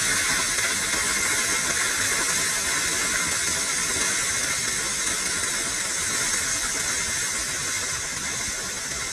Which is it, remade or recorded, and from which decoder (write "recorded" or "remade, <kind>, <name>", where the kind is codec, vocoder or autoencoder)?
recorded